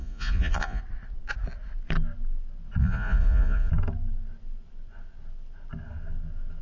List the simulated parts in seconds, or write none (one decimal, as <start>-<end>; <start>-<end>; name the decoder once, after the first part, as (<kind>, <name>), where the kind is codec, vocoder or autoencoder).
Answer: 0.0-0.8 (vocoder, Vocos); 2.8-3.7

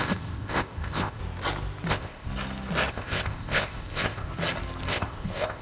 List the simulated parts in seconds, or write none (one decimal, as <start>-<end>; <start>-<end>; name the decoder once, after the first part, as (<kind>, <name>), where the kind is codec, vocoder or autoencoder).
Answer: 0.0-1.2 (codec, ZipCodec); 1.9-2.3; 2.9-4.3; 4.9-5.6

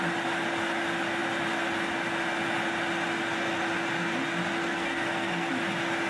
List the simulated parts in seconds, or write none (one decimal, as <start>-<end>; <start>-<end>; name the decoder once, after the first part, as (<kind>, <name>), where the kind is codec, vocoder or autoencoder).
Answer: 4.6-5.5 (codec, SNAC)

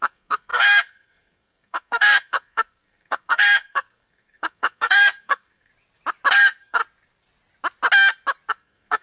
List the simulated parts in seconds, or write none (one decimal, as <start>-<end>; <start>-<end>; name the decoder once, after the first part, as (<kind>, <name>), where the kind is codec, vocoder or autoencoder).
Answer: 0.0-5.7 (codec, SNAC); 6.3-6.8; 8.5-9.0